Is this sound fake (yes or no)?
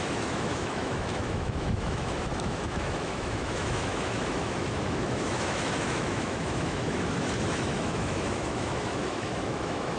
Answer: yes